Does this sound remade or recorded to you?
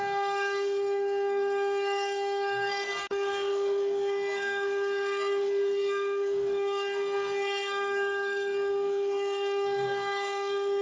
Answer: remade